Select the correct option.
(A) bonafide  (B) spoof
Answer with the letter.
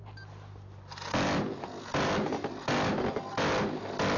A